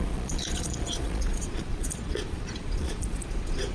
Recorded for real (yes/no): no